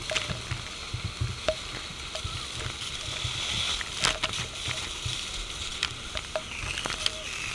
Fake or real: real